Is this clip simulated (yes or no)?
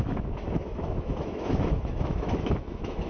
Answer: yes